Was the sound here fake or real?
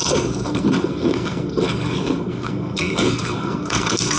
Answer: fake